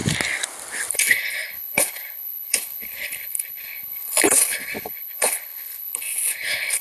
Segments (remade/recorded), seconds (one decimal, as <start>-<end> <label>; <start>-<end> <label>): 0.0-0.9 recorded; 0.9-6.8 remade